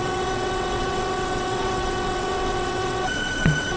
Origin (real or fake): fake